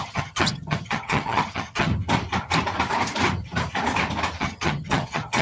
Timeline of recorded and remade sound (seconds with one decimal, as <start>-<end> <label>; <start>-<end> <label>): 0.0-1.9 remade; 1.9-4.4 recorded; 4.4-5.4 remade